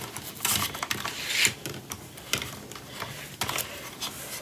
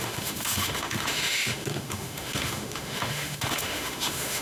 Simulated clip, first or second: second